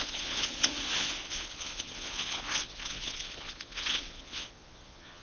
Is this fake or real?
fake